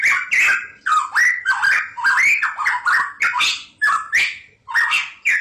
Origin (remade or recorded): recorded